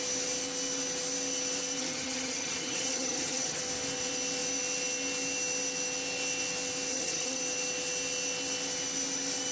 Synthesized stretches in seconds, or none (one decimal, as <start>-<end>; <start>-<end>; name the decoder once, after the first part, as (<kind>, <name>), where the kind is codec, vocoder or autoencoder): 1.8-3.6 (vocoder, HiFi-GAN); 6.9-7.4